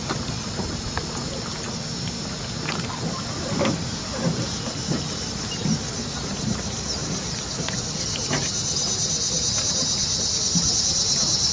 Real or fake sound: real